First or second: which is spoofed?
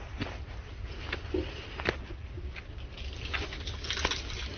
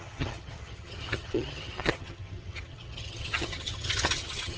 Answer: second